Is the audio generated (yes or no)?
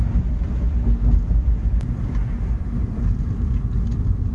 yes